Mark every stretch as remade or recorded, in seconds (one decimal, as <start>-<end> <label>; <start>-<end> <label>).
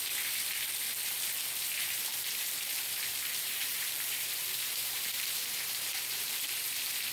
0.0-3.3 recorded; 3.3-6.4 remade; 6.4-7.1 recorded